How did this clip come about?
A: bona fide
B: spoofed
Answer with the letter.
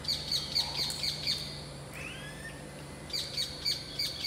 B